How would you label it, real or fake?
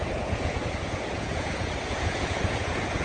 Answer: fake